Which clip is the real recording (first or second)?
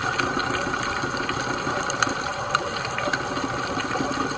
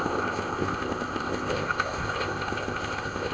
first